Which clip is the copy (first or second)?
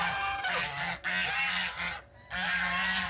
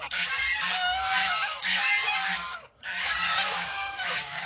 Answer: second